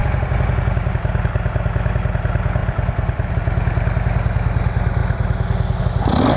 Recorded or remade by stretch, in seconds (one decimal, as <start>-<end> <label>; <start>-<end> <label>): 0.0-6.4 recorded